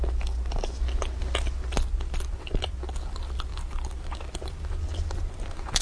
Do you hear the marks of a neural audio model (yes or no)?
no